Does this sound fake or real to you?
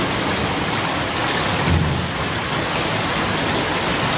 real